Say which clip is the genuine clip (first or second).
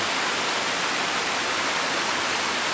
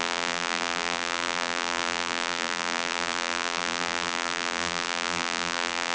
first